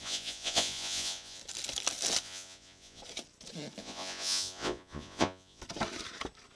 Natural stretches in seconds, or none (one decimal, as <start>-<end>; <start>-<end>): 1.4-2.2; 3.0-3.8; 5.6-6.6